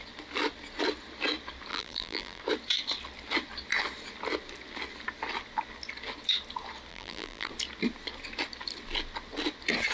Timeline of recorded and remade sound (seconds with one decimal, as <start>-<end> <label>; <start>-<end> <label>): 0.0-1.7 recorded; 1.7-2.4 remade; 2.4-6.9 recorded; 6.9-7.5 remade; 7.5-9.9 recorded